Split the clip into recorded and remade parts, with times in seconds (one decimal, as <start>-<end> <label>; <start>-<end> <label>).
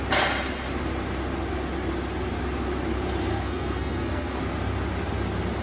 0.0-3.3 recorded; 3.3-4.4 remade; 4.4-5.6 recorded